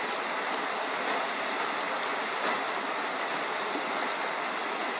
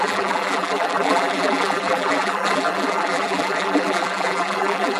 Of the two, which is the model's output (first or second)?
second